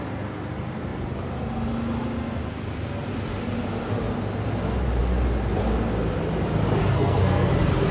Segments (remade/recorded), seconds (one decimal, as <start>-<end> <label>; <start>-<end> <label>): 0.0-6.8 recorded; 6.8-7.5 remade; 7.5-7.9 recorded